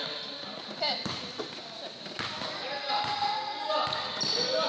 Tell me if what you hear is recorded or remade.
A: recorded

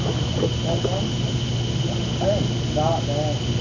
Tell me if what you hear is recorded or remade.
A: recorded